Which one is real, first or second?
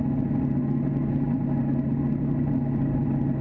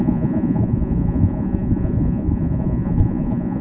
first